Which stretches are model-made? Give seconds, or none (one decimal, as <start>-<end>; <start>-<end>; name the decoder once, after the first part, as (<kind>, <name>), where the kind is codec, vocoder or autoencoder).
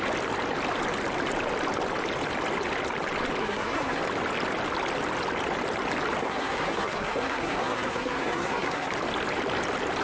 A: 3.4-4.0 (codec, SNAC); 6.2-8.9